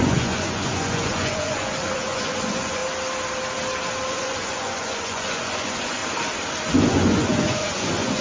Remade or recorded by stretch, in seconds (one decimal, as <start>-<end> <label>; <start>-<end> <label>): 0.0-2.8 remade; 2.8-4.1 recorded; 4.1-6.0 remade; 6.0-6.8 recorded; 6.8-8.2 remade